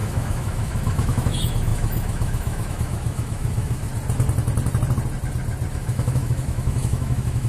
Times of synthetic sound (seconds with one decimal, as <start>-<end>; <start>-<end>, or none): 0.0-3.9; 5.7-7.5

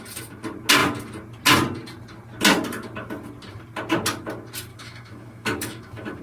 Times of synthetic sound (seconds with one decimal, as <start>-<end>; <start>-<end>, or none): 4.7-6.2